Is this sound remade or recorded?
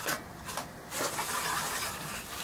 recorded